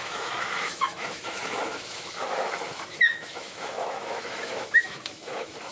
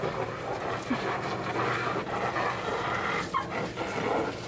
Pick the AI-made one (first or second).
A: first